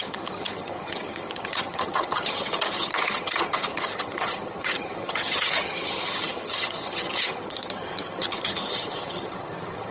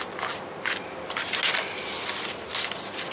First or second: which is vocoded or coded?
first